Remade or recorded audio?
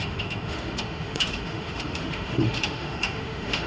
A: remade